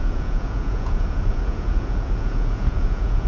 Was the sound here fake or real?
fake